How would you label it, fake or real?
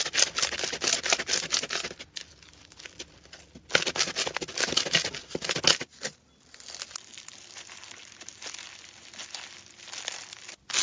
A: real